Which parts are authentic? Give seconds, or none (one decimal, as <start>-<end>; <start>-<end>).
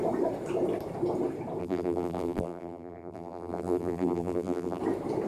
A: 0.0-1.6; 4.8-5.3